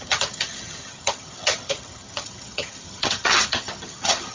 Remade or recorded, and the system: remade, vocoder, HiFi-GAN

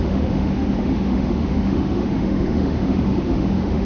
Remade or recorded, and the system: remade, autoencoder, DAC-VAE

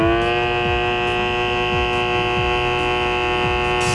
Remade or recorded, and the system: recorded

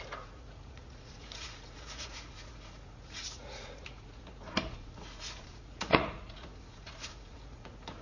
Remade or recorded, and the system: remade, vocoder, Vocos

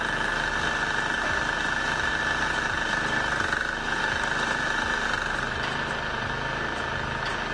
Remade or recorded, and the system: recorded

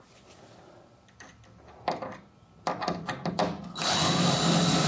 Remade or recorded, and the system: recorded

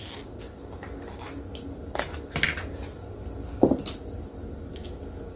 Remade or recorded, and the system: recorded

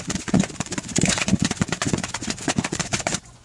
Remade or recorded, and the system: remade, vocoder, Vocos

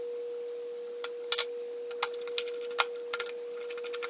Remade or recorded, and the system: recorded